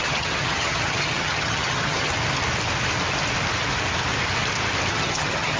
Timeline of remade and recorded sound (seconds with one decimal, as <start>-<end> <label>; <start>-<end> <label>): 0.0-2.1 remade; 2.1-4.9 recorded; 4.9-5.6 remade